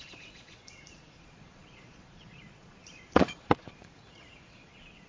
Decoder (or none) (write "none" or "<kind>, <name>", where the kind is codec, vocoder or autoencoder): vocoder, Vocos